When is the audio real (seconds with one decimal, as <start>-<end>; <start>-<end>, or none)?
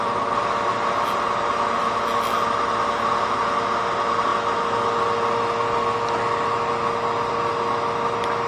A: 0.0-8.5